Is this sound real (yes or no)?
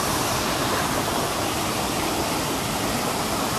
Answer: yes